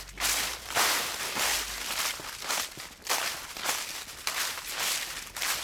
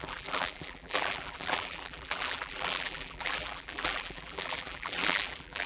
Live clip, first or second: first